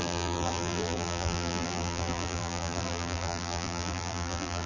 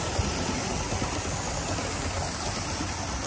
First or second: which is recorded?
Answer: second